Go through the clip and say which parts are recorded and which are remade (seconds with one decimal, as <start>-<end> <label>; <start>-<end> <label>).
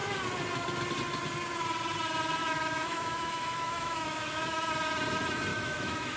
0.0-2.4 recorded; 2.4-4.7 remade; 4.7-5.5 recorded; 5.5-6.2 remade